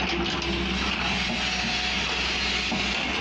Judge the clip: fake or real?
real